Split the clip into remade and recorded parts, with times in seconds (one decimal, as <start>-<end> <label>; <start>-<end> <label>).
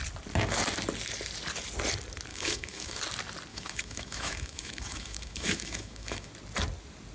0.0-2.3 recorded; 2.3-3.0 remade; 3.0-3.5 recorded; 3.5-6.3 remade; 6.3-7.1 recorded